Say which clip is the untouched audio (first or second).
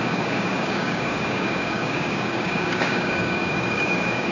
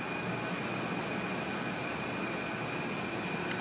second